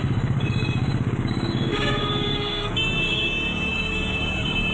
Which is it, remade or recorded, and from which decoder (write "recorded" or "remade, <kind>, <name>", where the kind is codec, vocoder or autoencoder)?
remade, codec, DAC